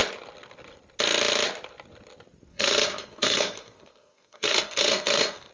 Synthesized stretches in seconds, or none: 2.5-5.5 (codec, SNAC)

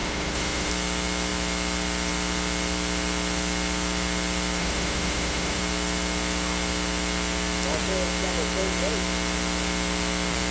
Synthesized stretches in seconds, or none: 0.0-0.7 (autoencoder, DAC-VAE); 4.6-5.6

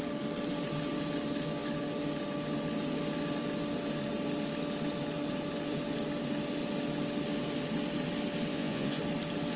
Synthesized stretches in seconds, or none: 8.5-9.0 (vocoder, Vocos)

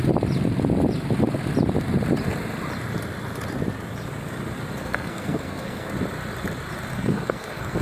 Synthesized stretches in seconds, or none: 4.8-5.9 (codec, SNAC); 6.9-7.8